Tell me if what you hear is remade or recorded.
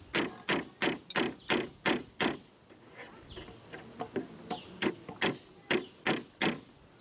recorded